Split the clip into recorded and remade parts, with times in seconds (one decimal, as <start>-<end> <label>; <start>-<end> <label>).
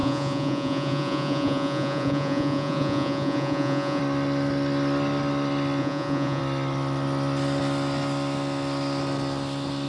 0.0-4.0 remade; 4.0-5.8 recorded; 5.8-6.4 remade; 6.4-9.9 recorded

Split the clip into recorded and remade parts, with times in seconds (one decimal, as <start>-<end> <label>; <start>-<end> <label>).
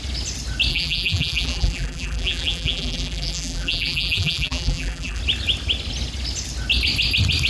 0.0-0.7 recorded; 0.7-5.2 remade; 5.2-7.5 recorded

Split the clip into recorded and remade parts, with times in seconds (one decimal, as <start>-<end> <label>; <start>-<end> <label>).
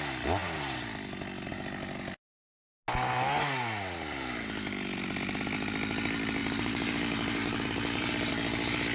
0.0-6.4 recorded; 6.4-8.3 remade; 8.3-8.9 recorded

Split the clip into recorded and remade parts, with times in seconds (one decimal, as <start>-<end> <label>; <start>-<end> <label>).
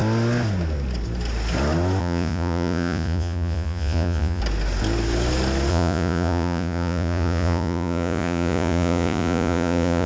0.0-2.0 recorded; 2.0-4.4 remade; 4.4-5.7 recorded; 5.7-10.1 remade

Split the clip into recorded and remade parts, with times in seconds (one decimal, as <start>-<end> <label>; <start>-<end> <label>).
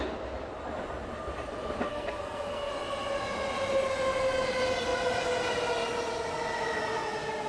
0.0-1.9 recorded; 1.9-2.7 remade; 2.7-7.5 recorded